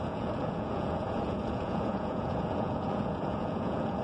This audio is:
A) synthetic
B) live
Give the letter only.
A